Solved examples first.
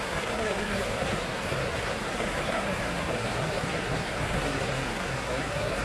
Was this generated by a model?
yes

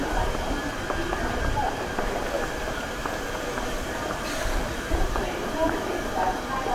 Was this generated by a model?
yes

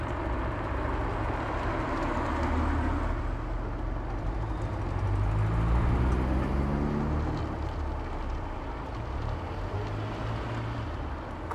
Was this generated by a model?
no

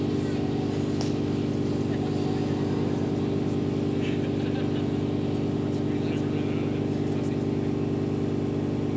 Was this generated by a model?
no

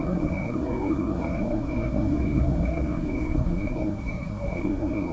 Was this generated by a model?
yes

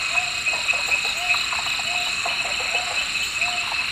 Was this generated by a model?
no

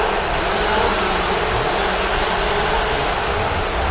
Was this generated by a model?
no